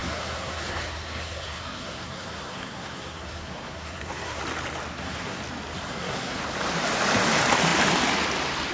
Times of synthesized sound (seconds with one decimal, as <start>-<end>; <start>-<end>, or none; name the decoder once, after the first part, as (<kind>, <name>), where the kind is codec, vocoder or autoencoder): 0.0-4.4 (codec, SNAC); 4.9-5.4; 5.9-6.4